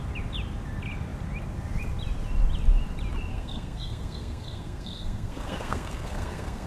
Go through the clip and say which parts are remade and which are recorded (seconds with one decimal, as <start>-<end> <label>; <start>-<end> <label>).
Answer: 0.0-3.3 recorded; 3.3-6.7 remade